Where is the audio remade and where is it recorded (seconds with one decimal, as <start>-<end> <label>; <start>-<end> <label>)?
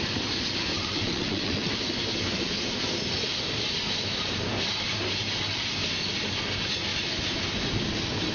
0.0-0.7 recorded; 0.7-1.7 remade; 1.7-8.3 recorded